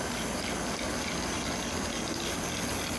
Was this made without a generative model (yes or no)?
yes